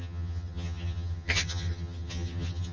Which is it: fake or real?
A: fake